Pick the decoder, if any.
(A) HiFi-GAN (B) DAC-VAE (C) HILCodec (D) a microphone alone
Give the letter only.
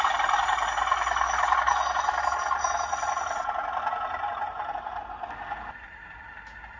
D